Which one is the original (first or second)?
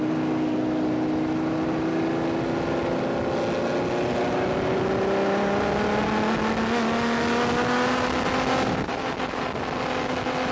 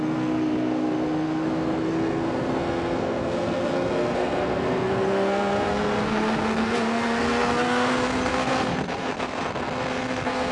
first